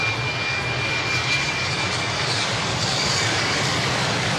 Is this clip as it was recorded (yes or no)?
no